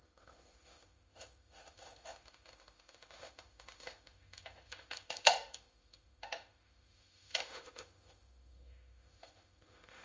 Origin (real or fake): fake